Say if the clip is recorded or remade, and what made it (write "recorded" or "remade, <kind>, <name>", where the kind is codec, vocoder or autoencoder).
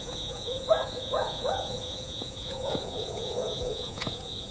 remade, vocoder, Vocos